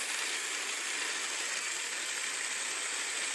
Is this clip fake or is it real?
real